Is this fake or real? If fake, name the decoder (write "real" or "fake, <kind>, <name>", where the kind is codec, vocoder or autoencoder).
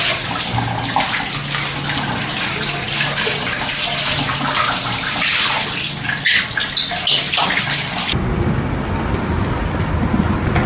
real